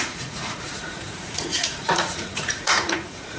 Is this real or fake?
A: fake